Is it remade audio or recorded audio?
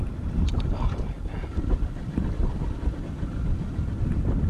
remade